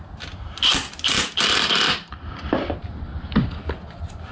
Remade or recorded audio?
recorded